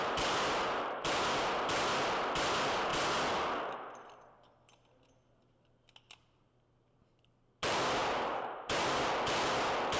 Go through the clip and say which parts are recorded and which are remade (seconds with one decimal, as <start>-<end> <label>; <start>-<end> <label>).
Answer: 0.0-8.0 recorded; 8.0-9.1 remade; 9.1-10.0 recorded